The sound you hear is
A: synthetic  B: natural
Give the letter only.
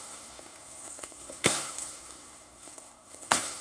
A